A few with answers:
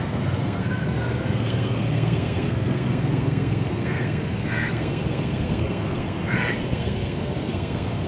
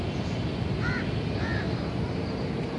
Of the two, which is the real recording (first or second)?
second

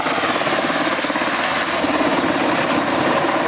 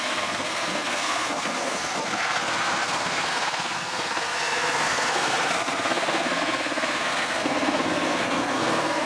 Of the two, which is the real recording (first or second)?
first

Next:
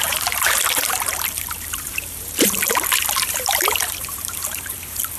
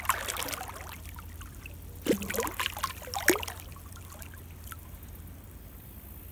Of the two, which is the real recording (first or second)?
second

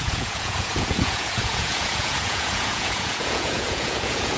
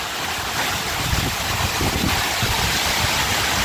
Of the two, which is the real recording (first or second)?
second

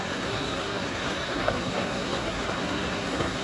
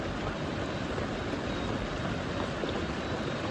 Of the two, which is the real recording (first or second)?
second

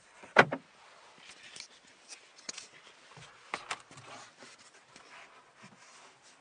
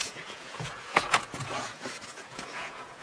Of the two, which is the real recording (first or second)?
first